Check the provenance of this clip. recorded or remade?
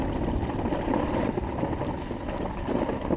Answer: recorded